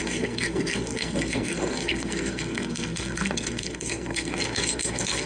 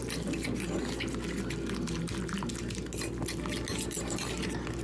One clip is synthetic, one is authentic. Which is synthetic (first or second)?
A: first